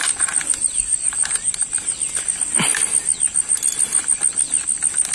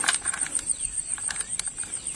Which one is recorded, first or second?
first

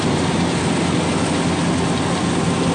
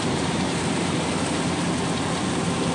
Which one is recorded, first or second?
first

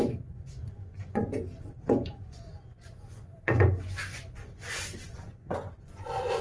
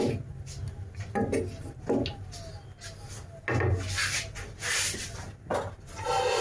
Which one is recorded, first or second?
second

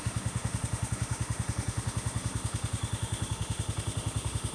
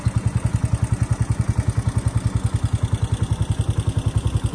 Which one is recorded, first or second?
second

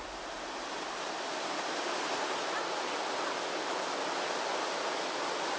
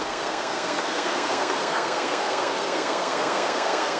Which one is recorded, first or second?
first